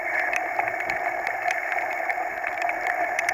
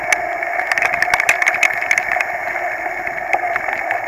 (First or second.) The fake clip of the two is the first